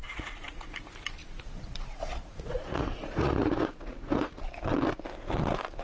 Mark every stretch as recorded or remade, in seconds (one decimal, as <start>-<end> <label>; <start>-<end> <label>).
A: 0.0-0.7 remade; 0.7-1.2 recorded; 1.2-4.5 remade; 4.5-5.8 recorded